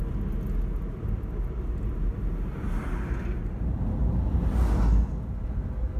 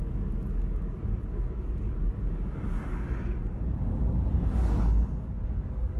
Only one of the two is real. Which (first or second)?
first